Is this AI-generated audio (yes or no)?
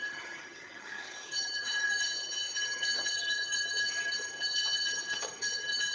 yes